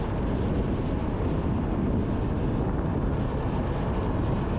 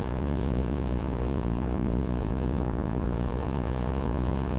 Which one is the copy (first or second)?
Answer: second